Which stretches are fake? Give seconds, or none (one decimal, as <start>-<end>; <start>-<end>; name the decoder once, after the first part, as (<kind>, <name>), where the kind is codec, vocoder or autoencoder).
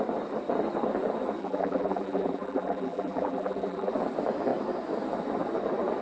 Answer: 1.4-3.9 (vocoder, BigVGAN v2)